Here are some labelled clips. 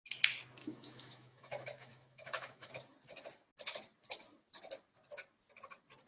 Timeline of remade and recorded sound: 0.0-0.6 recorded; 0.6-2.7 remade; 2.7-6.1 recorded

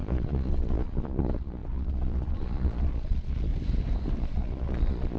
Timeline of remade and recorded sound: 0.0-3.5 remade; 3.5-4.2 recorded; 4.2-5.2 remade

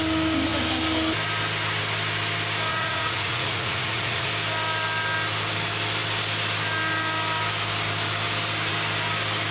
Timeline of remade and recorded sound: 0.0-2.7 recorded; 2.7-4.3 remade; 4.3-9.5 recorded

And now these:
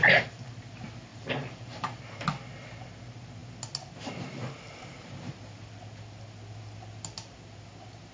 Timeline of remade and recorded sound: 0.0-0.6 remade; 0.6-1.1 recorded; 1.1-2.0 remade; 2.0-8.1 recorded

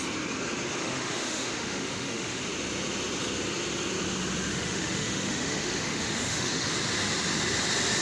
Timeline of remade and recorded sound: 0.0-0.8 recorded; 0.8-2.4 remade; 2.4-4.5 recorded; 4.5-6.7 remade; 6.7-8.0 recorded